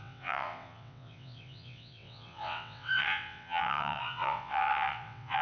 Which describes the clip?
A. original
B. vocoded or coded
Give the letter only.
B